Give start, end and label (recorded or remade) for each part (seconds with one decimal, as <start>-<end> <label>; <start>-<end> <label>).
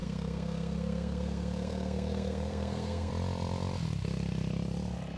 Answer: 0.0-3.1 remade; 3.1-5.2 recorded